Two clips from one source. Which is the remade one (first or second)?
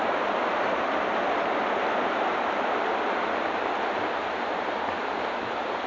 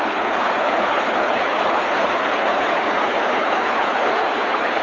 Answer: second